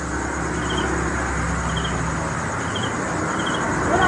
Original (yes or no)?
yes